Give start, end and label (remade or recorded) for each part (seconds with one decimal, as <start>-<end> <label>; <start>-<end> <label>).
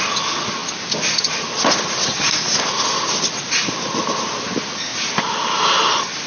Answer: 0.0-6.3 recorded